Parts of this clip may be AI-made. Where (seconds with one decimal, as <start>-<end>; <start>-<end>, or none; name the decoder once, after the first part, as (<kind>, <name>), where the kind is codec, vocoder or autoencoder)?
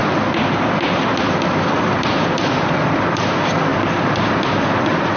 0.0-3.1 (vocoder, BigVGAN v2)